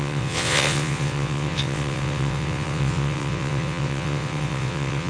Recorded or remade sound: remade